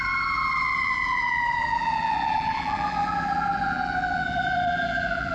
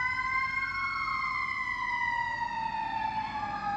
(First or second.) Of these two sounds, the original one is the second